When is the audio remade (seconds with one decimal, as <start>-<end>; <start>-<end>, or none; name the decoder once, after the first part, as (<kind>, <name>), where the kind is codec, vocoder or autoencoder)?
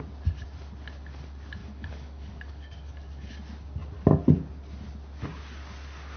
1.6-3.3 (codec, DAC)